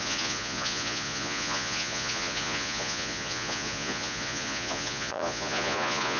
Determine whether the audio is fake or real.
fake